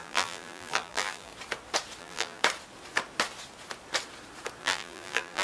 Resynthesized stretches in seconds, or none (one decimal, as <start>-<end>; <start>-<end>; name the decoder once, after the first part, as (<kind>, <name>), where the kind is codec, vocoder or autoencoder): 0.0-1.3 (vocoder, BigVGAN v2); 2.0-2.4; 4.6-5.4